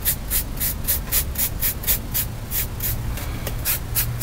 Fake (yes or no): no